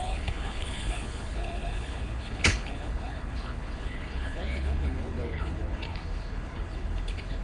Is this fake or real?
fake